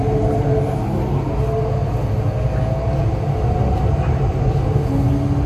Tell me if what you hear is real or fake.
real